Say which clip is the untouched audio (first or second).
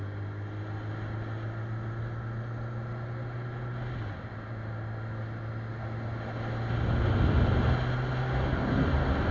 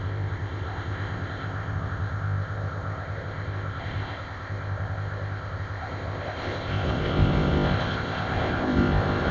first